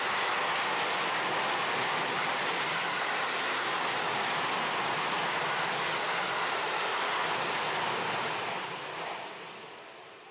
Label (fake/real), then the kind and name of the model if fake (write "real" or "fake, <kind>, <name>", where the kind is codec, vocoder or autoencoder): real